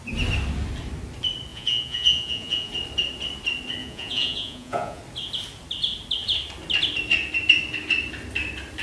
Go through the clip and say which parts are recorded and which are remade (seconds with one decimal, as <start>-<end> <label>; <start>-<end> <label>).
0.0-1.5 recorded; 1.5-2.7 remade; 2.7-3.8 recorded; 3.8-5.0 remade; 5.0-8.8 recorded

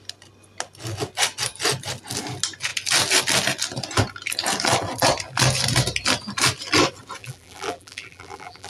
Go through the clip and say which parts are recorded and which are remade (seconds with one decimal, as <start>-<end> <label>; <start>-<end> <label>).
0.0-7.2 recorded; 7.2-8.7 remade

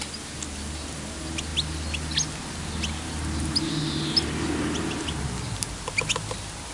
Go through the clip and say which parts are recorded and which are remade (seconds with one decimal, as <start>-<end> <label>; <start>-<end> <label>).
0.0-6.7 recorded

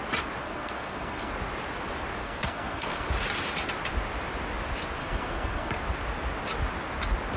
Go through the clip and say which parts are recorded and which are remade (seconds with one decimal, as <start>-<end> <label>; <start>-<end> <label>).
0.0-0.4 recorded; 0.4-1.3 remade; 1.3-2.2 recorded; 2.2-3.1 remade; 3.1-5.0 recorded; 5.0-5.7 remade; 5.7-7.4 recorded

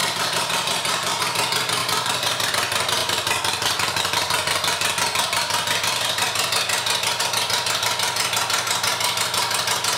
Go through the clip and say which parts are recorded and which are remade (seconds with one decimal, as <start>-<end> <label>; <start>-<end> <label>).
0.0-1.2 remade; 1.2-1.8 recorded; 1.8-2.5 remade; 2.5-10.0 recorded

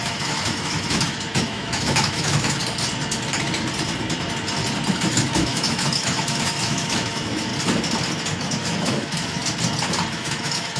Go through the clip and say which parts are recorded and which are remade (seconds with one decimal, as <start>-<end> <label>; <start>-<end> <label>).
0.0-2.6 remade; 2.6-4.9 recorded; 4.9-7.5 remade; 7.5-8.3 recorded; 8.3-9.4 remade; 9.4-10.1 recorded; 10.1-10.8 remade

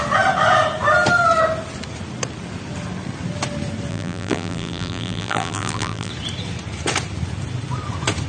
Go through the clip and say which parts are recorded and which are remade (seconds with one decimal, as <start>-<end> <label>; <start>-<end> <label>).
0.0-3.9 recorded; 3.9-6.1 remade; 6.1-8.3 recorded

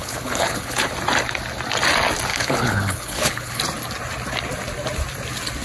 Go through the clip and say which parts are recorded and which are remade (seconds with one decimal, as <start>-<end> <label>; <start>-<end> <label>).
0.0-0.9 remade; 0.9-2.3 recorded; 2.3-3.6 remade; 3.6-5.6 recorded